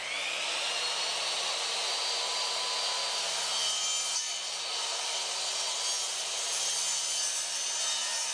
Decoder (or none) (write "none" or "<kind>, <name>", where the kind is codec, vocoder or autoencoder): none